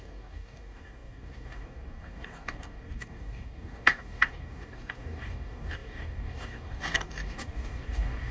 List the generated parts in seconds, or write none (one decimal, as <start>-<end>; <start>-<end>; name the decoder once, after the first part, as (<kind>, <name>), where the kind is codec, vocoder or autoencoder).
0.0-8.3 (codec, DAC)